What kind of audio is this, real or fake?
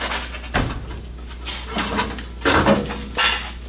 real